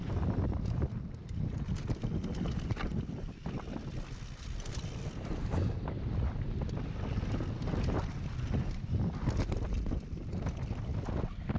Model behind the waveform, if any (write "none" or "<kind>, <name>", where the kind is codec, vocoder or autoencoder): none